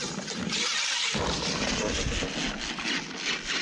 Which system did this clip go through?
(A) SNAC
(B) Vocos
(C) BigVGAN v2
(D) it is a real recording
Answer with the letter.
D